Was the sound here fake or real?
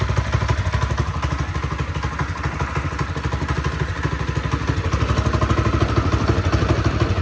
real